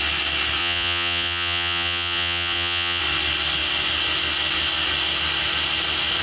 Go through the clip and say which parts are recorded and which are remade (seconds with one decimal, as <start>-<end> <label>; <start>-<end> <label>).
0.0-0.6 recorded; 0.6-3.0 remade; 3.0-6.2 recorded